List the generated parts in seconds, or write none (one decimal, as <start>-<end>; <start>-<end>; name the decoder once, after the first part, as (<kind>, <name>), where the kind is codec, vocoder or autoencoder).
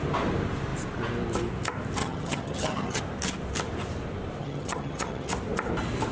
2.0-3.0 (vocoder, HiFi-GAN); 4.4-5.3